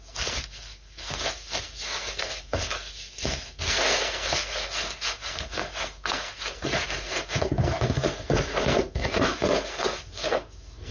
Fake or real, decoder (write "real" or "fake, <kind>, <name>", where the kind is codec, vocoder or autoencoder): fake, codec, SNAC